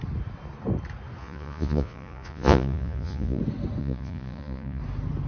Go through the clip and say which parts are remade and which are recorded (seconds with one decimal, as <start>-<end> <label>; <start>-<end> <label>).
0.0-1.2 recorded; 1.2-3.4 remade; 3.4-3.8 recorded; 3.8-4.8 remade; 4.8-5.3 recorded